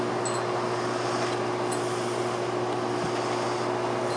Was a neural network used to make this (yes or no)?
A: no